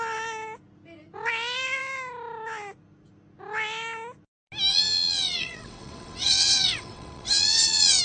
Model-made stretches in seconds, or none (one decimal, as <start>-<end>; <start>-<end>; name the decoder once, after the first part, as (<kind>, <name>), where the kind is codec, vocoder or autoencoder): 4.7-8.0 (vocoder, WaveNeXt)